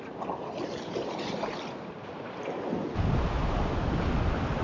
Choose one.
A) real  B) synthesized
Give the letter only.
A